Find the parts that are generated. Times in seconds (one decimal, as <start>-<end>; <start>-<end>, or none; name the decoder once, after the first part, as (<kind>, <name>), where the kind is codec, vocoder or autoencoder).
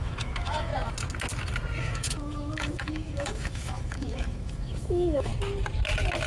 0.0-0.7 (autoencoder, DAC-VAE); 1.8-5.3